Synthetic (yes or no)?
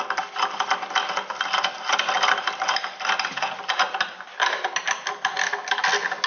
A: no